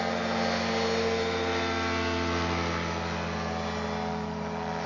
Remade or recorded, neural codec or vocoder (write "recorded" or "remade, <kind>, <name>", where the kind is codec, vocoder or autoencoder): recorded